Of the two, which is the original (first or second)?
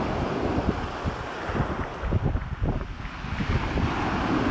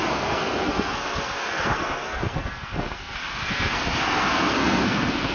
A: first